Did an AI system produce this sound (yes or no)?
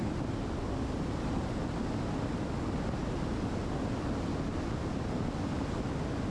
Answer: no